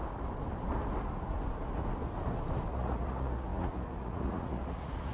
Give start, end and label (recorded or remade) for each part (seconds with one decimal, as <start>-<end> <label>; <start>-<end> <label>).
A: 0.0-2.7 recorded; 2.7-5.1 remade

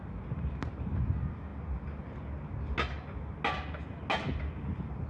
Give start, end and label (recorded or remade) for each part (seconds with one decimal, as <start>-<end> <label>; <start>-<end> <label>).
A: 0.0-5.1 recorded

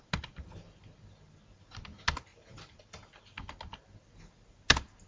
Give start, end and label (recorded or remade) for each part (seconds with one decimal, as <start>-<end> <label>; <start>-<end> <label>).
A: 0.0-5.1 recorded

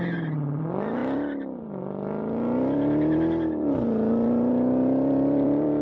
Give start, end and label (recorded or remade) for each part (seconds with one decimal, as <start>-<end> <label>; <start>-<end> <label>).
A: 0.0-5.8 remade

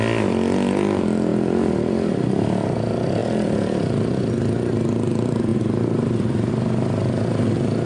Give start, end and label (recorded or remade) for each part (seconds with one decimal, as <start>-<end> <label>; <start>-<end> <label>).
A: 0.0-1.3 recorded; 1.3-1.9 remade; 1.9-3.2 recorded; 3.2-4.3 remade; 4.3-5.5 recorded; 5.5-6.5 remade; 6.5-7.9 recorded

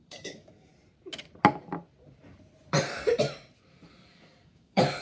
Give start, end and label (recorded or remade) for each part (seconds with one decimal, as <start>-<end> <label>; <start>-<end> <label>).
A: 0.0-0.7 remade; 0.7-3.7 recorded; 3.7-5.0 remade

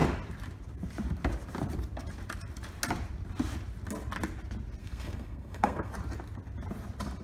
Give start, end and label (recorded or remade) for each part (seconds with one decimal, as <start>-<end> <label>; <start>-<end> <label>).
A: 0.0-4.8 recorded; 4.8-5.9 remade; 5.9-7.2 recorded

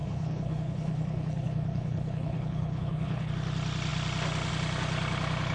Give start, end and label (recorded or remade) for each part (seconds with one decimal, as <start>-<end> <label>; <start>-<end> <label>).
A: 0.0-3.3 remade; 3.3-5.5 recorded